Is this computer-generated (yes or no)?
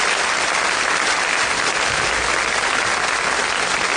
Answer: no